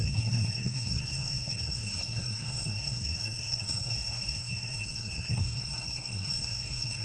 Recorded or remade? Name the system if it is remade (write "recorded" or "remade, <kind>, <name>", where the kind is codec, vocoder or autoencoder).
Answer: remade, codec, SNAC